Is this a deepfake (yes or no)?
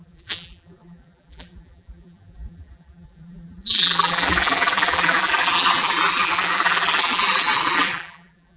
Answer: yes